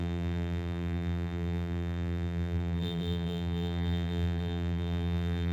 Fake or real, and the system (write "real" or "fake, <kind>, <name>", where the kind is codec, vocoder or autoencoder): fake, vocoder, BigVGAN v2